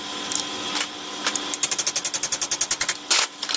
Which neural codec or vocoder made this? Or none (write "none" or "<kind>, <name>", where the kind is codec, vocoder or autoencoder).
none